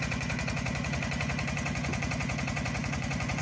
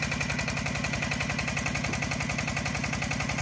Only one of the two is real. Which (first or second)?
second